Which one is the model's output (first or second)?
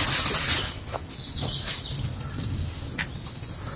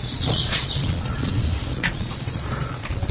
second